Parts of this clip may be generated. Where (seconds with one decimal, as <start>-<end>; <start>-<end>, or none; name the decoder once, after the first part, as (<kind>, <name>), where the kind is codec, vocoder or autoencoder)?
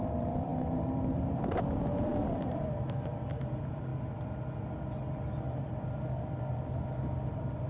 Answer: 0.0-0.5 (vocoder, BigVGAN v2); 1.1-3.9; 4.8-7.7